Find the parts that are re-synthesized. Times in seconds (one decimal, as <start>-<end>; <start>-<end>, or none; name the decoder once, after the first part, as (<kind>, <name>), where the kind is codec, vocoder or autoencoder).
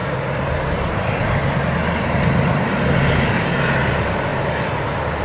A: none